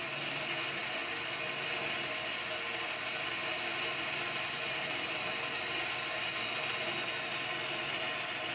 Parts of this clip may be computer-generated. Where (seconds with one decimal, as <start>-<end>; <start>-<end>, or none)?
3.4-5.6